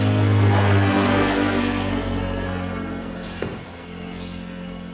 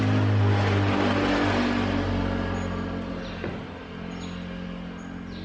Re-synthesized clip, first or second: first